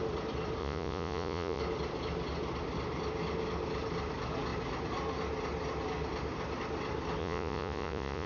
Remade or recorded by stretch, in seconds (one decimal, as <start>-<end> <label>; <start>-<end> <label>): 0.0-0.6 recorded; 0.6-1.6 remade; 1.6-7.2 recorded; 7.2-8.3 remade